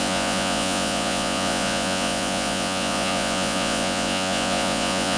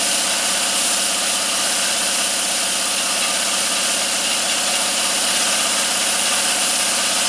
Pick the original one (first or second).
second